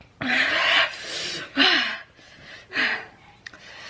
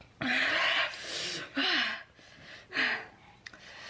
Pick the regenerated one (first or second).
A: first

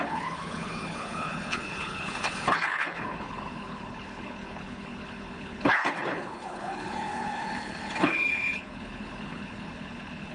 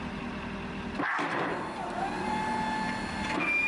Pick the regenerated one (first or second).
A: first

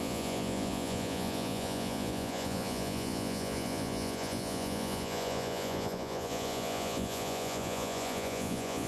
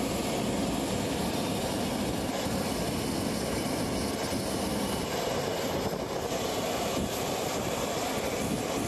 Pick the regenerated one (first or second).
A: first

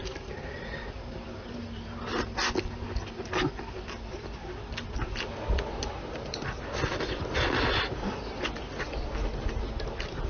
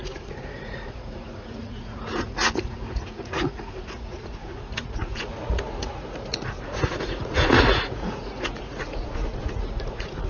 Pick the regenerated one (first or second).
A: second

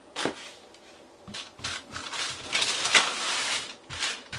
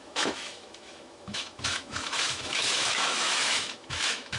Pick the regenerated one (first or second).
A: second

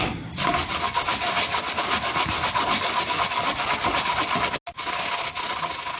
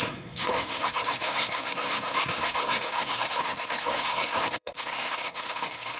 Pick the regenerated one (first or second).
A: second